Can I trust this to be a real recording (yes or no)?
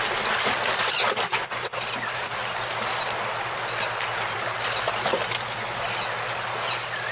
yes